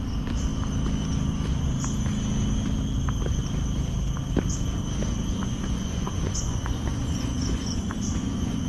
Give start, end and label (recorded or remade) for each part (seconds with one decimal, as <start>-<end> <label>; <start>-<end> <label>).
0.0-5.4 recorded; 5.4-8.7 remade